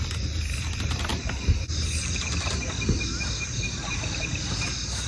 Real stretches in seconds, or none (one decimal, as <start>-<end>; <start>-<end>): 0.0-5.1